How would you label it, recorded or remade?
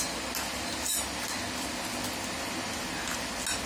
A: recorded